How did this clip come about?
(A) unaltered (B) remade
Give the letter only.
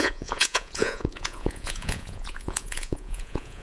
B